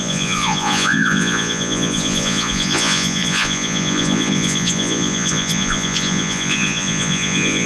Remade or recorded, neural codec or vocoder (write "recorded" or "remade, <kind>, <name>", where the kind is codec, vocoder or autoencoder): remade, vocoder, Vocos